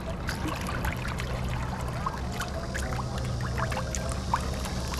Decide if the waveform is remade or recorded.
recorded